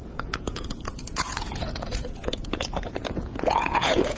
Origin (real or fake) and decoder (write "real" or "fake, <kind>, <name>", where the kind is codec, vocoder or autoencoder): fake, vocoder, Vocos